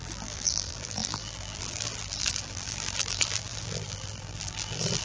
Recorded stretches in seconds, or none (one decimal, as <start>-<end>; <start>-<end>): none